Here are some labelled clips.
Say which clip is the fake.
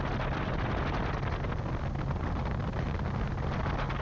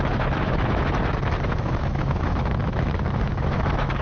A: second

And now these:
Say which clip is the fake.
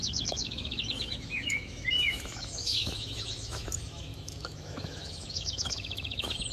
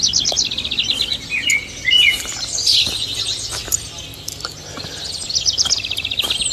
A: first